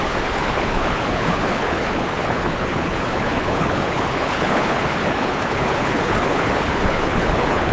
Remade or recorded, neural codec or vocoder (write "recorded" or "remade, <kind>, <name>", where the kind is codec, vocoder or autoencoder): remade, codec, HILCodec